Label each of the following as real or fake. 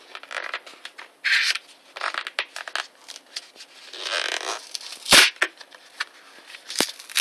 real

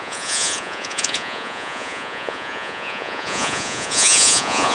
fake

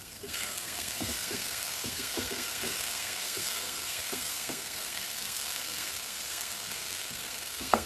fake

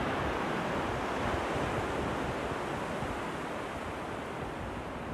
real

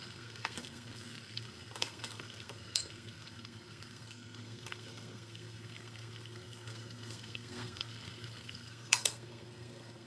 fake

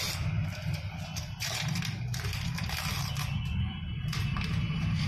fake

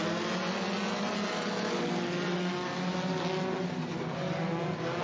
real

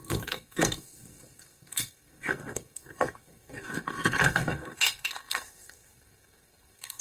fake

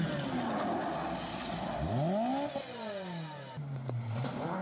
real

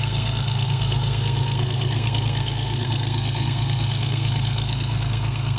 fake